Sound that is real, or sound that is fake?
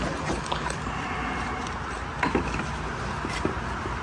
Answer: real